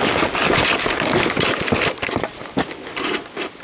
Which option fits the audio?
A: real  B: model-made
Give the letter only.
A